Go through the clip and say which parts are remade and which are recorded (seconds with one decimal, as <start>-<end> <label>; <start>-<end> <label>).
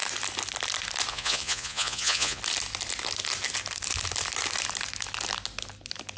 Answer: 0.0-1.1 recorded; 1.1-2.4 remade; 2.4-6.2 recorded